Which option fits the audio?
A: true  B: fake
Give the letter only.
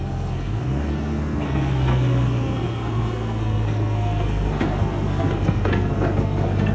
B